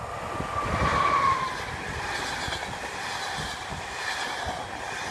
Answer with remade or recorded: recorded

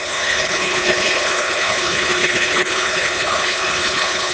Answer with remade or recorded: remade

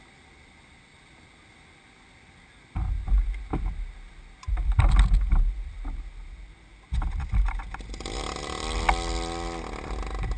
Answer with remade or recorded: recorded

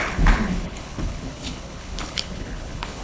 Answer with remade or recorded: remade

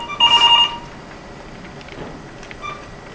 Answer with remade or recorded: recorded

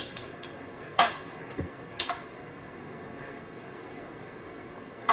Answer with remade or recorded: remade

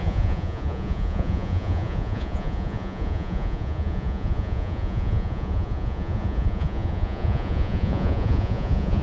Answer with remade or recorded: remade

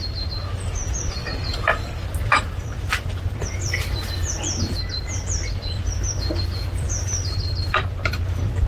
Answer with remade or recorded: remade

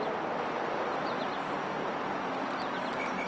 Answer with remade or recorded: recorded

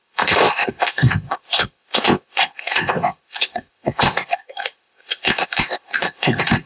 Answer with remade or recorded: remade